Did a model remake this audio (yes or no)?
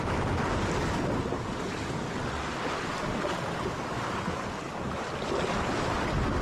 no